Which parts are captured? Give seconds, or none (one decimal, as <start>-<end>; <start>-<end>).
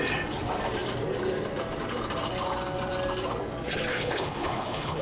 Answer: 0.0-3.9